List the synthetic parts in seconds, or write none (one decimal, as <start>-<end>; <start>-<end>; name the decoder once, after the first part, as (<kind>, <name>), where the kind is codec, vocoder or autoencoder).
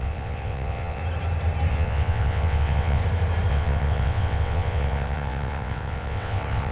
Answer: 0.0-1.0 (vocoder, WaveNeXt); 1.7-3.0; 3.5-6.7